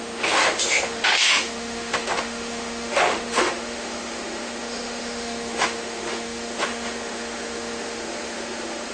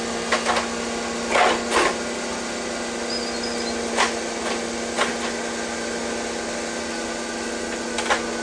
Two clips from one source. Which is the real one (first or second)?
second